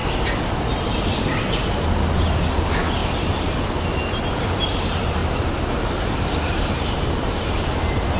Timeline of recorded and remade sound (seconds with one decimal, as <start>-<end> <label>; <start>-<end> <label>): 0.0-0.7 recorded; 0.7-1.3 remade; 1.3-2.4 recorded; 2.4-3.0 remade; 3.0-4.1 recorded; 4.1-5.2 remade; 5.2-5.8 recorded; 5.8-8.2 remade